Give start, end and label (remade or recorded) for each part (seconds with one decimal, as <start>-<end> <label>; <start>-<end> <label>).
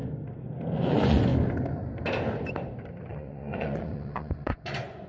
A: 0.0-0.8 recorded; 0.8-1.3 remade; 1.3-3.1 recorded; 3.1-5.1 remade